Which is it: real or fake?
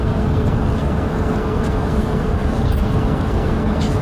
fake